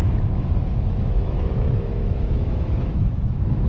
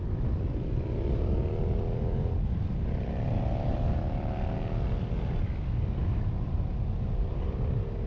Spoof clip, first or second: first